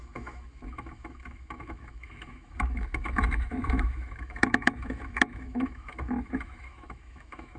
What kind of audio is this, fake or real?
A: fake